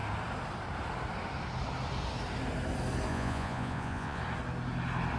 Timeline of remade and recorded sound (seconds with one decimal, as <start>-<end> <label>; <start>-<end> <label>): 0.0-3.1 recorded; 3.1-4.2 remade; 4.2-5.2 recorded